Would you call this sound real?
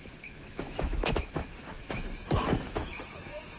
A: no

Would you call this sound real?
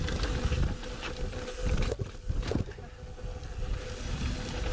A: yes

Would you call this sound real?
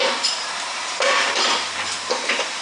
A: no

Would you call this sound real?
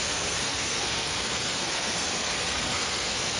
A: no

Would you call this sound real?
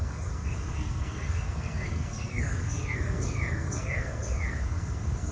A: no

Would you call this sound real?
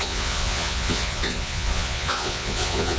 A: no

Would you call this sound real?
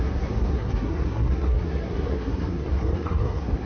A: no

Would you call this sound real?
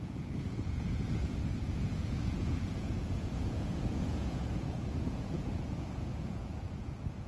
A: no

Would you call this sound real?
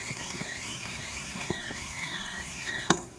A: no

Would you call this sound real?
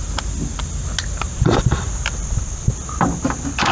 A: yes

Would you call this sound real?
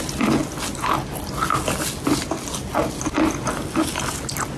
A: yes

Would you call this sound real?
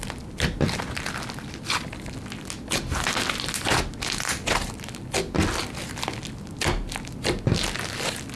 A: yes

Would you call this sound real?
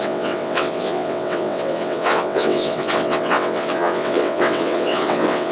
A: no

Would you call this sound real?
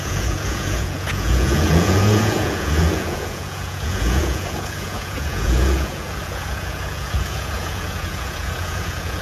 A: no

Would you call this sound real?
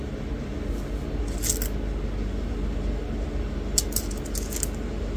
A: yes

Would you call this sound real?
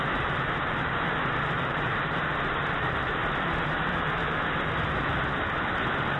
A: no